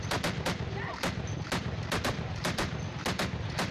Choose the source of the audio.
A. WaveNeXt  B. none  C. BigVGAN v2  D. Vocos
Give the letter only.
C